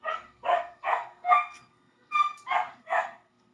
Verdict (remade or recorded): remade